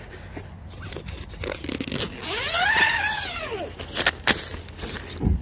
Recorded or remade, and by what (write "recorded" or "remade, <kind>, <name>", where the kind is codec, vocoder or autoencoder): recorded